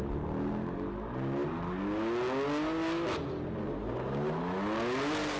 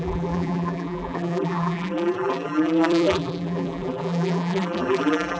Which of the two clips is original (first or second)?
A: first